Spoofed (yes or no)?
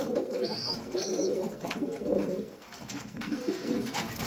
yes